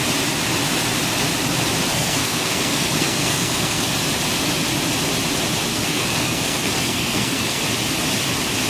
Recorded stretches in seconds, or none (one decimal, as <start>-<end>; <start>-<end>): 0.0-1.9; 3.9-5.7; 7.6-8.7